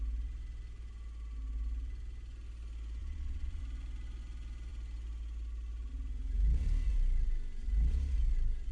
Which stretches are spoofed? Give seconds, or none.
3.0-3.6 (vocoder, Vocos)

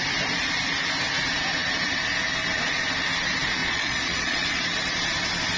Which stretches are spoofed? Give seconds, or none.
3.6-4.6 (vocoder, Vocos)

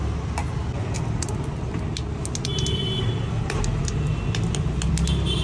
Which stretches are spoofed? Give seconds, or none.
none

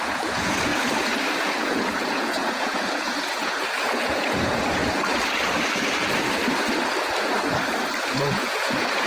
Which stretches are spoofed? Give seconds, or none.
0.0-0.7 (vocoder, Vocos); 1.4-4.8; 8.0-9.1